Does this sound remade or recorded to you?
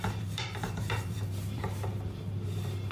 remade